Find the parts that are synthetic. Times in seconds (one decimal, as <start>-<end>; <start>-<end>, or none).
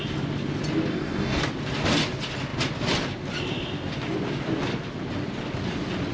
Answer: 0.9-1.4